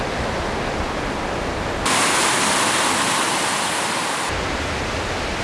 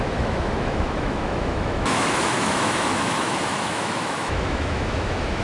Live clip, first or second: first